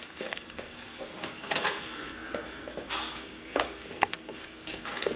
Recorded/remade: remade